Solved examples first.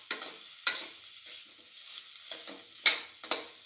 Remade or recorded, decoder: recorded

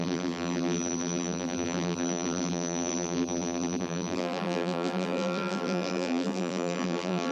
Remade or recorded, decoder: remade, vocoder, BigVGAN v2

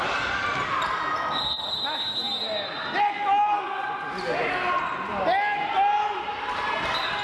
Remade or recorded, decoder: recorded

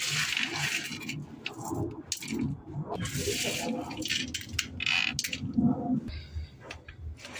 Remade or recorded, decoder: recorded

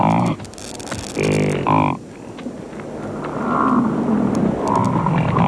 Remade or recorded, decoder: recorded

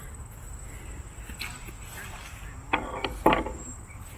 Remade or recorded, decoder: recorded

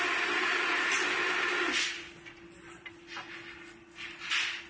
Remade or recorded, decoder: recorded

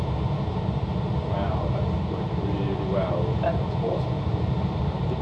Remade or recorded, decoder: remade, vocoder, BigVGAN v2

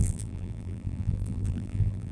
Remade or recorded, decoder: remade, vocoder, BigVGAN v2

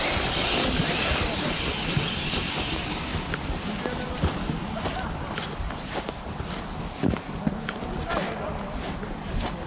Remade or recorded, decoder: recorded